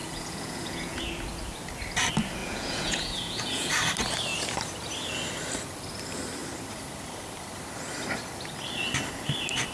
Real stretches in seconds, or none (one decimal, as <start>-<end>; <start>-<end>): 1.0-2.4; 3.7-9.7

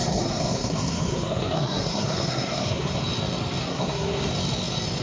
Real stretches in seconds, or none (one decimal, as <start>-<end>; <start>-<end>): 3.0-3.6; 4.3-5.0

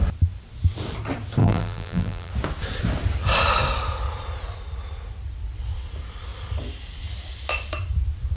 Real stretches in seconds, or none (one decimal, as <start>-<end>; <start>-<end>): 0.0-1.4; 2.3-8.4

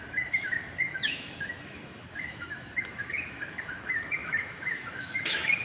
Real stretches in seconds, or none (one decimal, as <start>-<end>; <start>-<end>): none

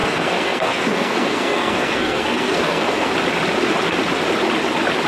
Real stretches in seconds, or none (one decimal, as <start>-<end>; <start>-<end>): 3.1-5.1